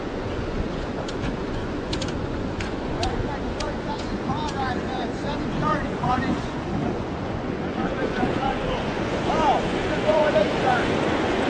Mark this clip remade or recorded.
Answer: remade